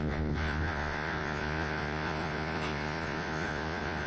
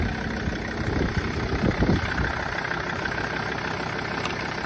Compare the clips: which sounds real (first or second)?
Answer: second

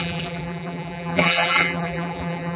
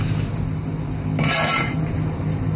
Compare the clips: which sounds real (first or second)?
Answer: second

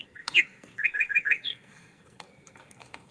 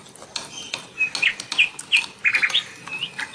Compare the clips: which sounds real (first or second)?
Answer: second